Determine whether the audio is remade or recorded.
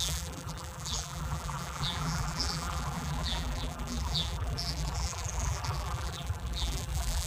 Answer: remade